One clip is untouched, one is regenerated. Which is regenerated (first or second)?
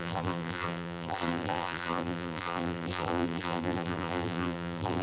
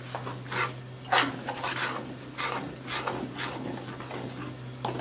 first